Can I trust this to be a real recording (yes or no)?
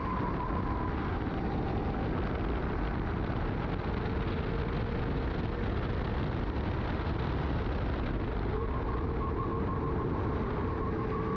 yes